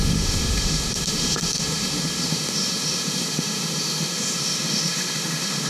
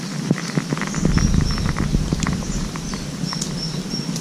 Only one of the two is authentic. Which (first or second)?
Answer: second